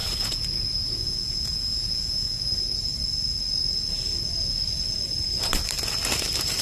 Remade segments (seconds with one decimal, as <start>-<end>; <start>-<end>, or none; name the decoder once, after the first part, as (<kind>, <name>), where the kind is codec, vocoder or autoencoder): 0.0-2.6 (vocoder, Vocos)